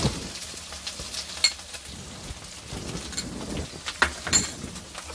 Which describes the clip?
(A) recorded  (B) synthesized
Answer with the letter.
A